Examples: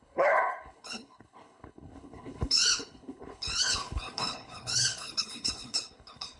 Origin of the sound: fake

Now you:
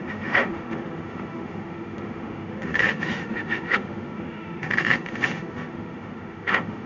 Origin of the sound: fake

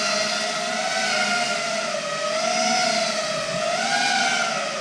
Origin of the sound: real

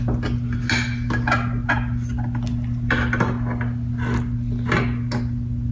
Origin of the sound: real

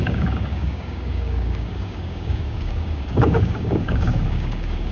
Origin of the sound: fake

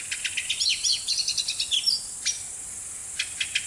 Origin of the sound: real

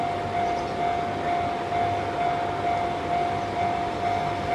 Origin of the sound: real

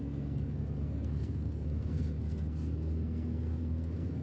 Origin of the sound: fake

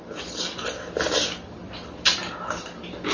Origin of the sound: real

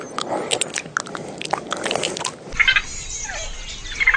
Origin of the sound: real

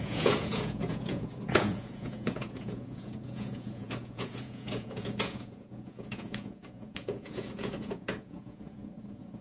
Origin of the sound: fake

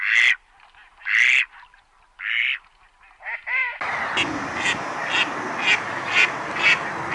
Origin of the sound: real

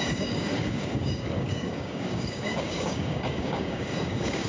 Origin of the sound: fake